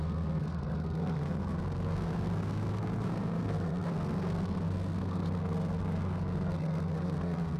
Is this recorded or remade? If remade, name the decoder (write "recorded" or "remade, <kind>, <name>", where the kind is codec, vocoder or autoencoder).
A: remade, codec, SNAC